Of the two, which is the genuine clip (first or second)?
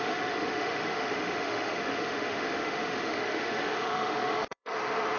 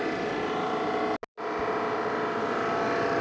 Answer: second